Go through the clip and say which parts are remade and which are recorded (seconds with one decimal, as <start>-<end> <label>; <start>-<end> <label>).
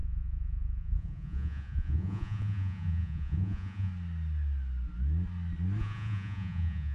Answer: 0.0-3.9 remade; 3.9-5.8 recorded; 5.8-6.9 remade